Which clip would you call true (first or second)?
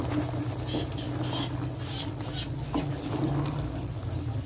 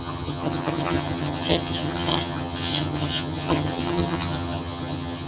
first